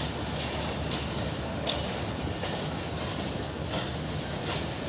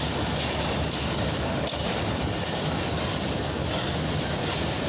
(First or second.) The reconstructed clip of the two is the second